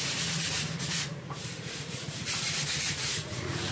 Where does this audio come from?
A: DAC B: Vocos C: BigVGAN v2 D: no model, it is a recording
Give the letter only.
B